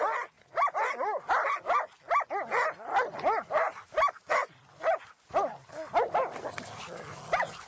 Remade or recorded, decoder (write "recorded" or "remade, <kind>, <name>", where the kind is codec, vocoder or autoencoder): recorded